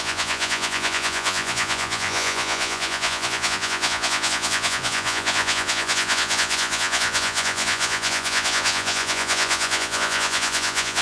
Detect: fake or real fake